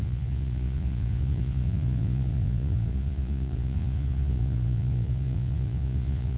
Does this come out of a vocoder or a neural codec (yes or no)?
yes